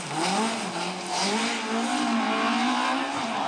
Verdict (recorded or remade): recorded